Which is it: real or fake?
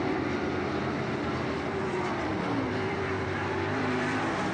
fake